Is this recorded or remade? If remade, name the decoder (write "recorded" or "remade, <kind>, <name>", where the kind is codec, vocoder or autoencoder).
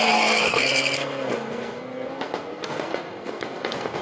remade, codec, SNAC